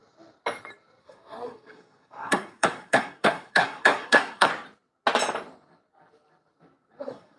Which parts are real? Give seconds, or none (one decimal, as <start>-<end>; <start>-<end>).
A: 0.0-1.0; 4.5-7.0